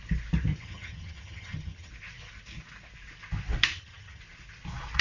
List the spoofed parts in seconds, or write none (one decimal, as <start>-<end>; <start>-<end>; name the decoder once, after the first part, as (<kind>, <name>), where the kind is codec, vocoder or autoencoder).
0.5-1.9 (vocoder, HiFi-GAN); 3.7-4.2